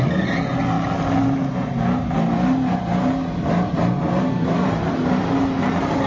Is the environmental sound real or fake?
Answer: real